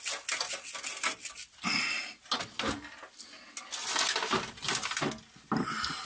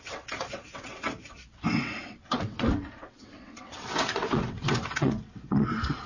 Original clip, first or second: first